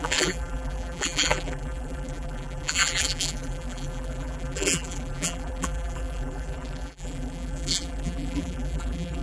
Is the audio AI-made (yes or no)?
yes